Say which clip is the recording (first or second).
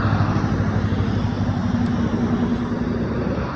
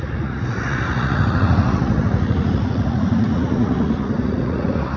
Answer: first